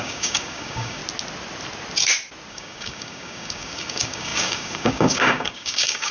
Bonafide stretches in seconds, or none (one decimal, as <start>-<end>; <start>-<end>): 1.0-2.5